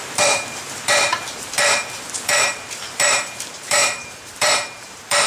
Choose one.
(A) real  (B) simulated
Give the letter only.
B